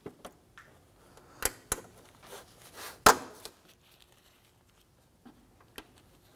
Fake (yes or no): no